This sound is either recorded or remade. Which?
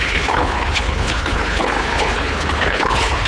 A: remade